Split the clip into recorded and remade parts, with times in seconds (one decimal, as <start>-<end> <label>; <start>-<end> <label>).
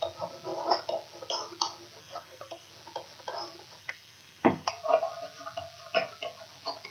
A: 0.0-2.0 recorded; 2.0-2.7 remade; 2.7-3.8 recorded; 3.8-4.7 remade; 4.7-6.9 recorded